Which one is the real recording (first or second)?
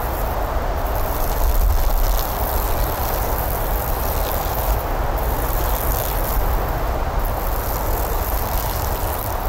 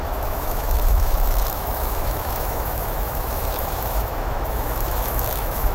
first